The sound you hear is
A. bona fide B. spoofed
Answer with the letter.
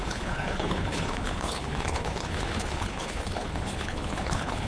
B